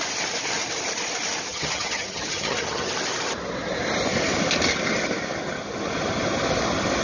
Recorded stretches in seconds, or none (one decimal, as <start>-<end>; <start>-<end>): 0.0-1.5; 2.9-7.0